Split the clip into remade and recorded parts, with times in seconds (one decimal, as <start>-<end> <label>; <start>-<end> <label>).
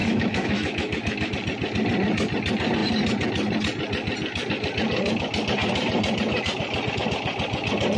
0.0-1.3 remade; 1.3-8.0 recorded